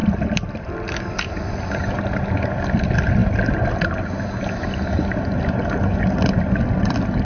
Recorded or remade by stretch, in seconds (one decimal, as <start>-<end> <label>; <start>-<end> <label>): 0.0-7.2 recorded